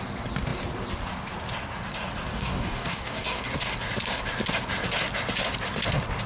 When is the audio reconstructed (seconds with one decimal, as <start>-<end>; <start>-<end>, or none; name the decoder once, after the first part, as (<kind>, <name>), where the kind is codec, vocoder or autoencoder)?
2.3-3.5 (codec, DAC)